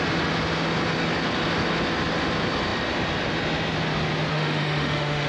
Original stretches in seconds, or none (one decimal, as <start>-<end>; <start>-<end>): 0.0-4.3